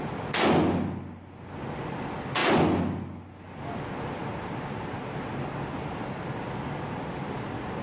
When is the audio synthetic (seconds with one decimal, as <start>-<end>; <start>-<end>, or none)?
none